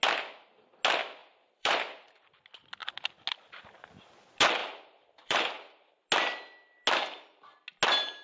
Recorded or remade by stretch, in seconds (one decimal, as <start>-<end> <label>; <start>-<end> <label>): 0.0-1.2 recorded; 1.2-2.4 remade; 2.4-4.6 recorded; 4.6-5.9 remade; 5.9-8.2 recorded